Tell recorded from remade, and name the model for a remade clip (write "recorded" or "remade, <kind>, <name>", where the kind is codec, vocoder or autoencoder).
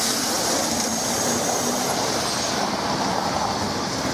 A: recorded